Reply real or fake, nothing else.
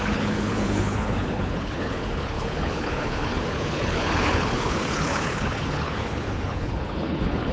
fake